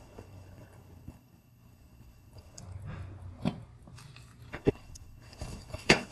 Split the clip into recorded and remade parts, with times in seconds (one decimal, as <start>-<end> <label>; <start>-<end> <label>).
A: 0.0-2.6 remade; 2.6-4.5 recorded; 4.5-6.1 remade